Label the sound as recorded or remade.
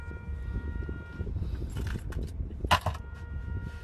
recorded